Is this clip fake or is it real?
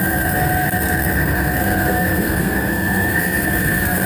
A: fake